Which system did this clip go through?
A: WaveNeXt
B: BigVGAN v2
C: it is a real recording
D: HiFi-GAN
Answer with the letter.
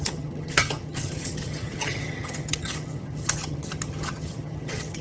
D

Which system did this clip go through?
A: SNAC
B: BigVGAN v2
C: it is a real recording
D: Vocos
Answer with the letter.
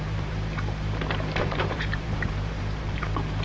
B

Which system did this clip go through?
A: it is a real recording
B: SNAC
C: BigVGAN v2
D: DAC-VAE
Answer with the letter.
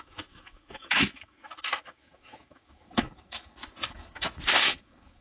D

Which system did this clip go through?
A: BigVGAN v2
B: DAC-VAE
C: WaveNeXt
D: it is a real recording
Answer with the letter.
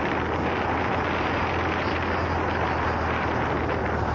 D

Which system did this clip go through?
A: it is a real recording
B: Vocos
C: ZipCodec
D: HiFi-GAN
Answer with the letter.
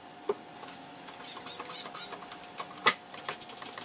A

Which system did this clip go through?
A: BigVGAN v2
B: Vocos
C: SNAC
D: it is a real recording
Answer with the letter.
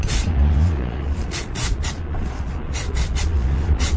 B